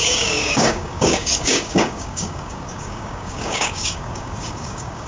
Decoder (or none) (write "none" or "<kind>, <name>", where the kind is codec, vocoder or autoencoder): codec, DAC